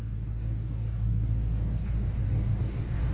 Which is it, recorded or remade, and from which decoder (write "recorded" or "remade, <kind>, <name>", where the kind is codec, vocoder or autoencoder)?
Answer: remade, codec, DAC